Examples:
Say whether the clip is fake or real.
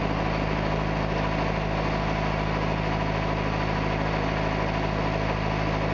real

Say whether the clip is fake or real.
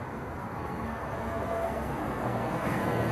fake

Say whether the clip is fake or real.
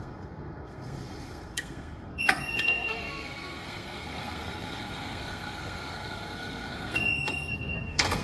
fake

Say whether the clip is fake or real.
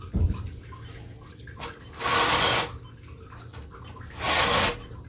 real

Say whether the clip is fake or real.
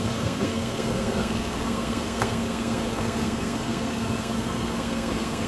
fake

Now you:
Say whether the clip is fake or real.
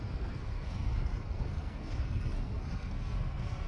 fake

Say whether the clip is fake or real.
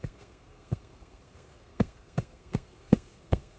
fake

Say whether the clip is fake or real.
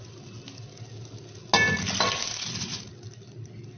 real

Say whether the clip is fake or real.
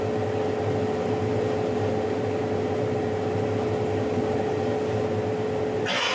real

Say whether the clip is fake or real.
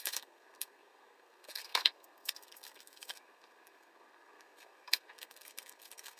fake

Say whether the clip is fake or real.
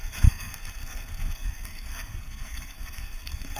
fake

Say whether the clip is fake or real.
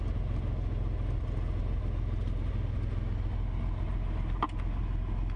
real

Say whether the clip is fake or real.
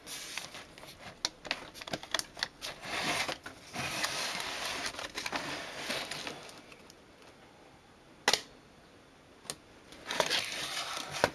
real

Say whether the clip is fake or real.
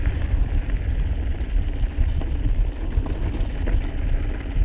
real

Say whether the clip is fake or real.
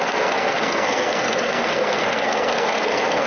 fake